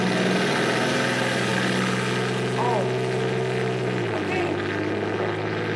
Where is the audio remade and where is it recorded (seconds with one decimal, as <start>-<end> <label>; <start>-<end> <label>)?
0.0-5.8 recorded